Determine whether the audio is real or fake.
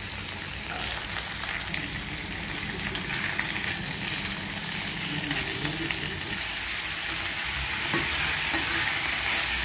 real